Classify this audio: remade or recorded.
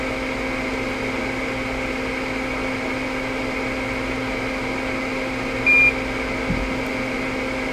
recorded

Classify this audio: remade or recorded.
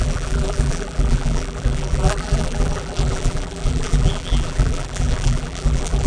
remade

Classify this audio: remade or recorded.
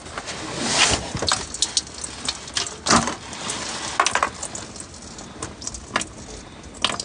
recorded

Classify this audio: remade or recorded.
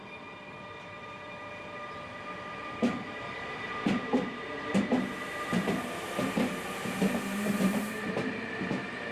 remade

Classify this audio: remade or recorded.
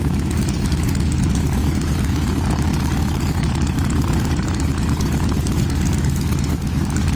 remade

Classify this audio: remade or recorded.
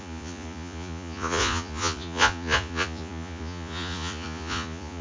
remade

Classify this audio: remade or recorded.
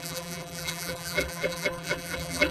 remade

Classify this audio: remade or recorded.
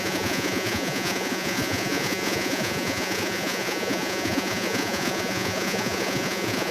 remade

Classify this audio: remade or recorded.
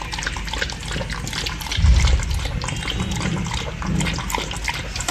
recorded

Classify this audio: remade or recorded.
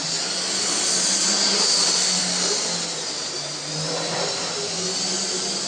recorded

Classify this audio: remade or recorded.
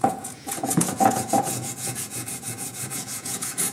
remade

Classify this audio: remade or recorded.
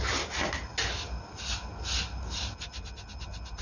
recorded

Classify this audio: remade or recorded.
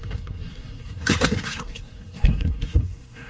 remade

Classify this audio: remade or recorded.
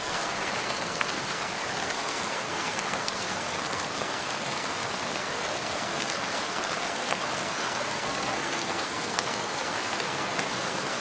remade